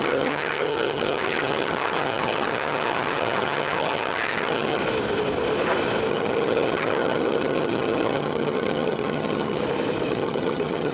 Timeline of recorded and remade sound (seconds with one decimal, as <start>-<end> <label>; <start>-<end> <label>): 0.0-4.8 remade; 4.8-6.1 recorded; 6.1-9.6 remade; 9.6-10.1 recorded; 10.1-10.9 remade